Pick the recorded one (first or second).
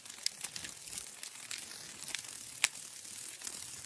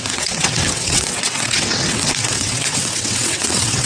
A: first